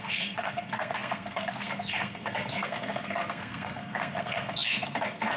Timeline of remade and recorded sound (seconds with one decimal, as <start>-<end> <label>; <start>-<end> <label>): 0.0-5.4 remade